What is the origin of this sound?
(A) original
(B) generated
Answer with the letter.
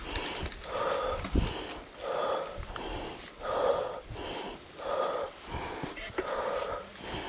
A